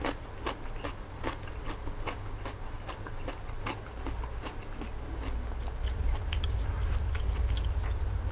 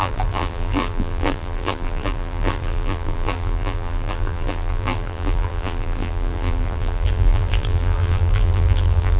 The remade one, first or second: second